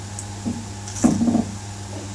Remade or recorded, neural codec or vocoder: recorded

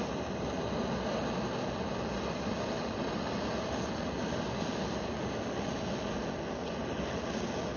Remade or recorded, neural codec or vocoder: recorded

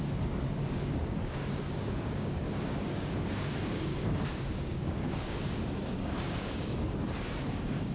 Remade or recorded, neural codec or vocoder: remade, codec, DAC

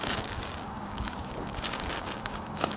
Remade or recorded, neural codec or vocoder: remade, codec, DAC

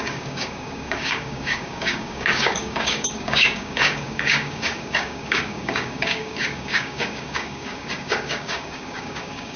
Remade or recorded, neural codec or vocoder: remade, codec, DAC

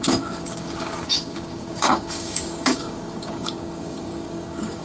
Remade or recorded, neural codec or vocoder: remade, codec, DAC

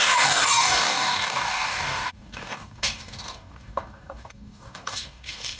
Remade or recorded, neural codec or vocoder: remade, codec, DAC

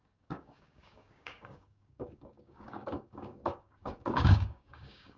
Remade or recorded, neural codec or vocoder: remade, codec, DAC